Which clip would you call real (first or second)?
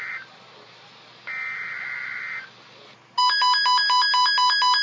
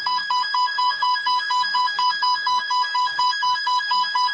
first